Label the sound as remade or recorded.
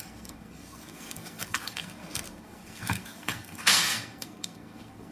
remade